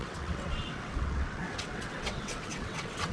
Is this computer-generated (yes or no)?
yes